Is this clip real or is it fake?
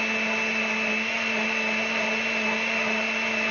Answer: real